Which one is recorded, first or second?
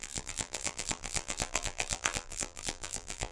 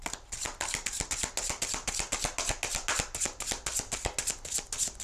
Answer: second